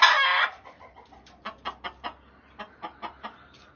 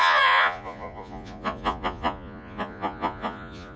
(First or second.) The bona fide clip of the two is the first